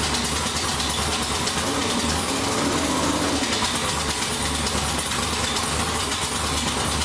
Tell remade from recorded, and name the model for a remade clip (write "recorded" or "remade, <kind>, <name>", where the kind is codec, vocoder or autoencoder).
recorded